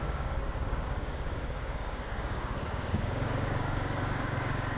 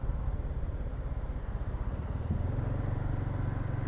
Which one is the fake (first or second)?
first